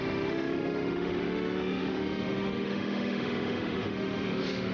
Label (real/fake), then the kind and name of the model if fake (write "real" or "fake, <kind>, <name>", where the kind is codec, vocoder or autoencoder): fake, autoencoder, DAC-VAE